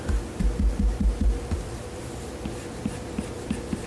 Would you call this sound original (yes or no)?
yes